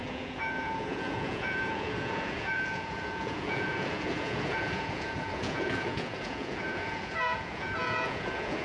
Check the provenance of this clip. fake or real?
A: fake